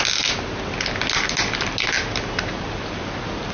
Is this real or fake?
real